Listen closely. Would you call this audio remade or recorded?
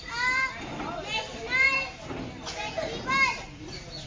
recorded